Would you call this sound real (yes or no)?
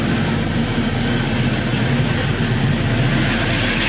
yes